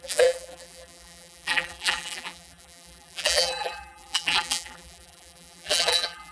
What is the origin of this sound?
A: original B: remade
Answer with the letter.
B